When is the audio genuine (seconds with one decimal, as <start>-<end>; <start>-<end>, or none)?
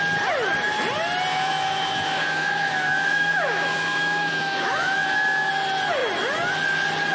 0.0-1.3; 5.5-7.1